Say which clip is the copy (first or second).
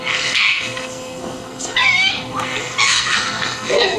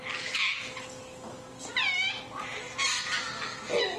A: first